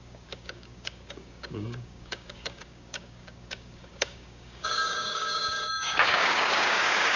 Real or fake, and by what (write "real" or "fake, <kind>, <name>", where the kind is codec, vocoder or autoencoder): fake, codec, DAC